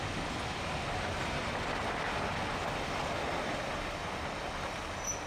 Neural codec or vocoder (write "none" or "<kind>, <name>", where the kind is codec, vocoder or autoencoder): none